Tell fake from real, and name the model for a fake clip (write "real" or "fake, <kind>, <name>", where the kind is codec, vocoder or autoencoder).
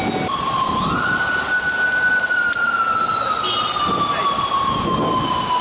real